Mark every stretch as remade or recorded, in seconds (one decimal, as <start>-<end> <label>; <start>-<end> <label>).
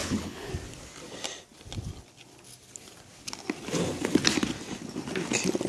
0.0-0.5 remade; 0.5-5.7 recorded